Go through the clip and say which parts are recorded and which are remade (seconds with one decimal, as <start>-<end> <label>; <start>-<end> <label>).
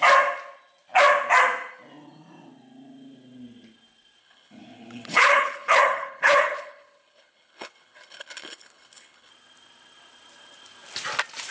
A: 0.0-4.2 recorded; 4.2-9.3 remade; 9.3-11.5 recorded